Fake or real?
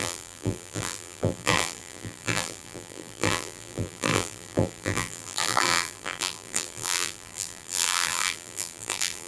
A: fake